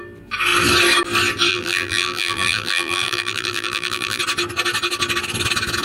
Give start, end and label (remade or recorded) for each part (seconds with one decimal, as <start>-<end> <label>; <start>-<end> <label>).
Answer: 0.0-1.5 recorded; 1.5-4.2 remade; 4.2-5.8 recorded